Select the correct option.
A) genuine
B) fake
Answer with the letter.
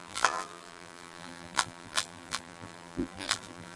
B